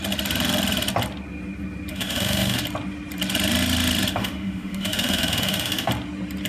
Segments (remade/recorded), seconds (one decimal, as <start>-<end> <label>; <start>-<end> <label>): 0.0-1.9 recorded; 1.9-2.6 remade; 2.6-4.1 recorded; 4.1-5.9 remade; 5.9-6.5 recorded